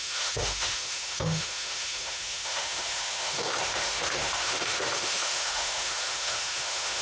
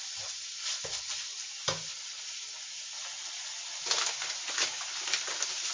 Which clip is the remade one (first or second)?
first